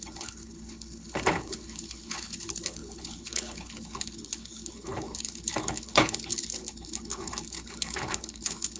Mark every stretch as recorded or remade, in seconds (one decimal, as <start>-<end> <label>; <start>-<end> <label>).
0.0-8.8 remade